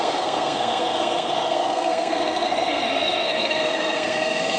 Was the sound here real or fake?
fake